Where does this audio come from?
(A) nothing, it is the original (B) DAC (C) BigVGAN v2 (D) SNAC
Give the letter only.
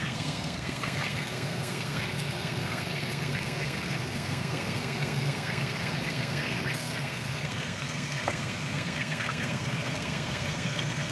D